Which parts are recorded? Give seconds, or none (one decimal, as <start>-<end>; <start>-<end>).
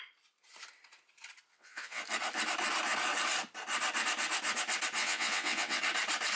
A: 0.0-1.5; 2.0-5.0; 5.8-6.4